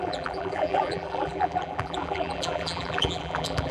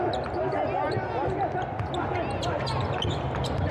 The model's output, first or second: first